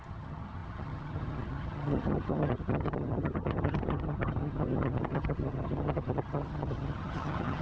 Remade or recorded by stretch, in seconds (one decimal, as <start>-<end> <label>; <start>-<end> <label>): 0.0-7.6 remade

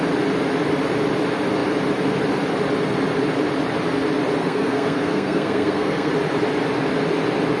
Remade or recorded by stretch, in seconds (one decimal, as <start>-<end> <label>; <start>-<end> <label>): 0.0-4.4 recorded; 4.4-6.1 remade; 6.1-7.6 recorded

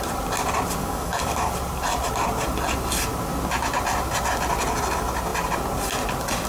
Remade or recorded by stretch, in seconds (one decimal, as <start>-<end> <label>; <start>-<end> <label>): 0.0-0.8 recorded; 0.8-1.5 remade; 1.5-6.5 recorded